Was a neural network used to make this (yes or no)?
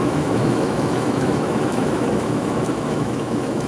yes